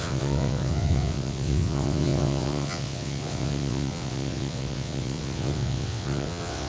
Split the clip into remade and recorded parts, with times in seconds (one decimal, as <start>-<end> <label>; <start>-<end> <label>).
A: 0.0-6.7 remade